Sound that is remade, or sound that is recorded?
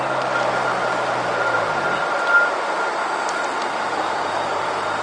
recorded